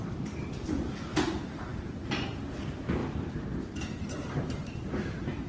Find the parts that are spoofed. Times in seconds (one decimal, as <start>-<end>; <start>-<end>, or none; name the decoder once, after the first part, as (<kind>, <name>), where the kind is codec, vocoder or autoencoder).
3.0-5.5 (vocoder, BigVGAN v2)